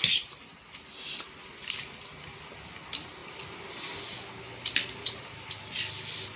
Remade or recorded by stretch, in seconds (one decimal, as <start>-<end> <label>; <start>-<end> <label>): 0.0-6.4 recorded